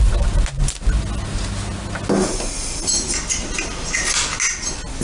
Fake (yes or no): no